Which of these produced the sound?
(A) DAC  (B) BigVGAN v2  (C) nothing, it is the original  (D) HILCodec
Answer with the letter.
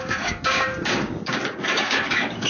A